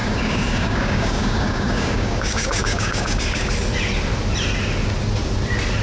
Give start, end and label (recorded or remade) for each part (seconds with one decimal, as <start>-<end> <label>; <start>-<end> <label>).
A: 0.0-3.5 remade; 3.5-5.8 recorded